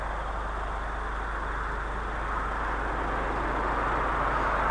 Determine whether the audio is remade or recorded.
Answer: recorded